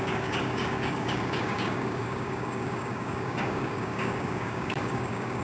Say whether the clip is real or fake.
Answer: fake